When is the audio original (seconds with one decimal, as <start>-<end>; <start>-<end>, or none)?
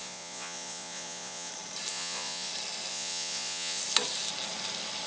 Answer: 1.5-1.9; 2.5-2.9; 3.8-5.1